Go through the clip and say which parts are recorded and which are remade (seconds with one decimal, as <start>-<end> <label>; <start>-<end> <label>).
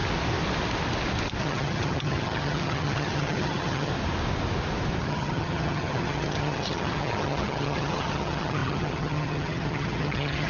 0.0-1.4 recorded; 1.4-3.9 remade; 3.9-5.0 recorded; 5.0-10.5 remade